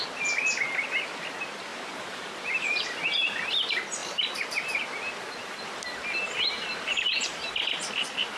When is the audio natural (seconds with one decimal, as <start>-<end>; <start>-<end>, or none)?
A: 0.0-1.7; 3.5-6.7; 7.5-8.4